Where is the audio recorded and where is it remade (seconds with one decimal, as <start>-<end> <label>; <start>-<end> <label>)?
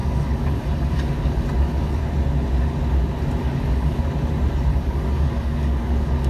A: 0.0-2.0 remade; 2.0-3.4 recorded; 3.4-4.0 remade; 4.0-4.7 recorded; 4.7-6.3 remade